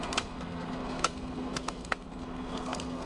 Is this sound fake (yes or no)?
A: yes